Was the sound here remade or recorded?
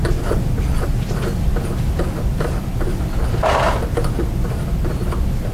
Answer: recorded